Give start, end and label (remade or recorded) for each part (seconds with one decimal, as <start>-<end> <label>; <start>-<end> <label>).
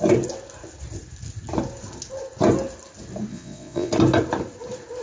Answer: 0.0-3.3 recorded; 3.3-3.9 remade; 3.9-5.0 recorded